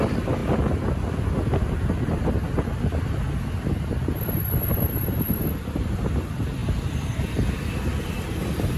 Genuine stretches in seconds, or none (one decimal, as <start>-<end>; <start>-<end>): 0.4-2.3; 6.6-7.7